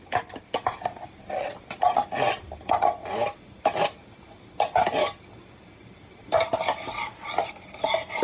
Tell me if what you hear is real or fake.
real